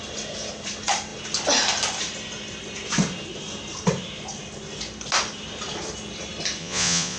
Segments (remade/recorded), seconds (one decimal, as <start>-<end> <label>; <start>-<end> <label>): 0.0-6.6 recorded; 6.6-7.2 remade